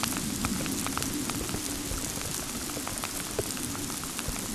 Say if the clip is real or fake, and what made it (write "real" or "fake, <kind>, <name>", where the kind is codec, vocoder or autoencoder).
real